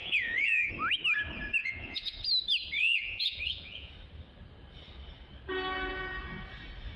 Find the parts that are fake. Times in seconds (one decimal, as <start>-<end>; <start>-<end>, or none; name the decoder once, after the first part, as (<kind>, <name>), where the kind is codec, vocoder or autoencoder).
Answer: 0.0-0.7 (vocoder, Vocos); 1.6-2.2; 2.8-3.9